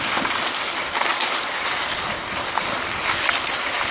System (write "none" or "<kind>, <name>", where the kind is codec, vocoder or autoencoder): vocoder, BigVGAN v2